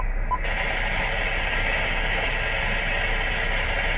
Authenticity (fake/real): real